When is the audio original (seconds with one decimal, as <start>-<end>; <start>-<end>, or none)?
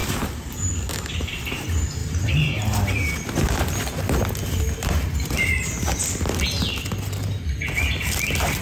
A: 0.7-2.0; 3.1-8.6